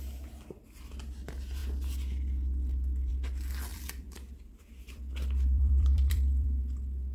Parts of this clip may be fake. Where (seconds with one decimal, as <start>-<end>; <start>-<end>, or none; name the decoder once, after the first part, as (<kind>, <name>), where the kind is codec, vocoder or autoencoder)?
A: 3.7-6.6 (vocoder, BigVGAN v2)